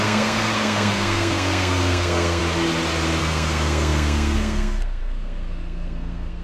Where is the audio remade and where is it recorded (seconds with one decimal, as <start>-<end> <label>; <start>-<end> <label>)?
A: 0.0-2.4 remade; 2.4-3.2 recorded; 3.2-6.4 remade